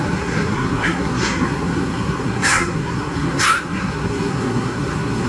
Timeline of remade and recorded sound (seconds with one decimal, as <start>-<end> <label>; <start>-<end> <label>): 0.0-5.3 remade